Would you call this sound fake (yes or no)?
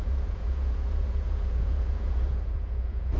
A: yes